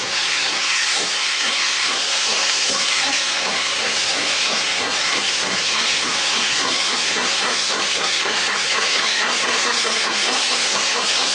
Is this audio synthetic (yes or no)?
yes